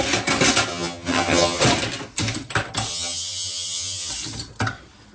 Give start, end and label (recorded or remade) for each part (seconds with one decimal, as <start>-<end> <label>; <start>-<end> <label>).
0.0-0.7 recorded; 0.7-1.6 remade; 1.6-2.9 recorded; 2.9-4.1 remade; 4.1-5.1 recorded